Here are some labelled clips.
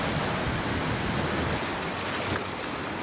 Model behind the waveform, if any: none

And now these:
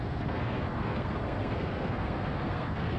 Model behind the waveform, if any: codec, SNAC